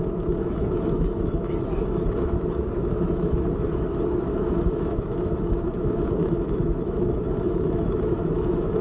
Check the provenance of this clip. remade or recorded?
remade